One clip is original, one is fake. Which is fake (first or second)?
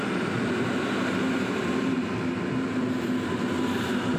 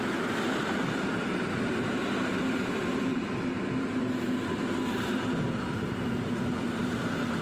second